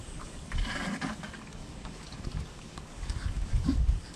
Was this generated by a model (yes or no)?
yes